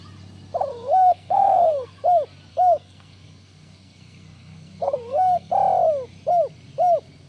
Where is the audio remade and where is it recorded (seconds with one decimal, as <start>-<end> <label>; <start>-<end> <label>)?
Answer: 0.0-0.7 recorded; 0.7-2.0 remade; 2.0-2.5 recorded; 2.5-5.5 remade; 5.5-7.3 recorded